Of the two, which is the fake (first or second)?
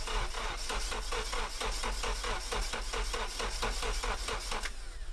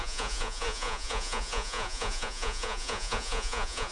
second